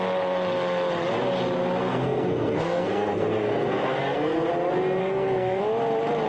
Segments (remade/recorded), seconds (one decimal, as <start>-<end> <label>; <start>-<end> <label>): 0.0-1.8 recorded; 1.8-4.5 remade; 4.5-5.0 recorded; 5.0-5.6 remade; 5.6-6.3 recorded